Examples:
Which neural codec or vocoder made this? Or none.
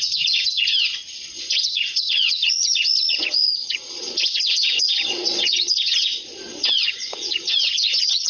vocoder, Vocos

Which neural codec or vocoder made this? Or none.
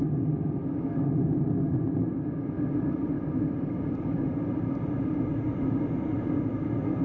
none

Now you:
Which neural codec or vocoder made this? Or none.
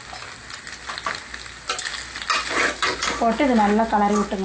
none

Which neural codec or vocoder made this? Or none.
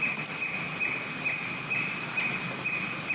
none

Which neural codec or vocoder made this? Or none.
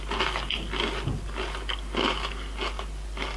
none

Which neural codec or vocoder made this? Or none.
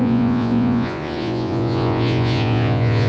vocoder, Vocos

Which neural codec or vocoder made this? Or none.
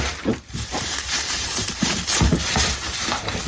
vocoder, BigVGAN v2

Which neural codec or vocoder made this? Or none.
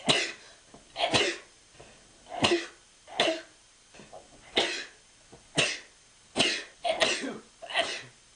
none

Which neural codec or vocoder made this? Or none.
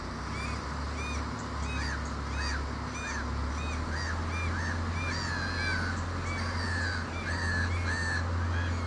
none